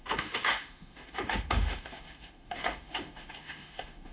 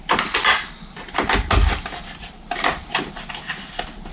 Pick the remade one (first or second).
first